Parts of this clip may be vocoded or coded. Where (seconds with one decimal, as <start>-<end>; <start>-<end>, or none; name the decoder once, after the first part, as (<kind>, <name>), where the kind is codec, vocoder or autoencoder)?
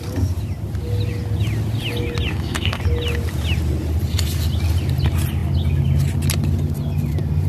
2.3-2.8 (codec, SNAC)